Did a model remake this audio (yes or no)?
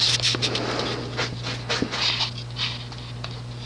no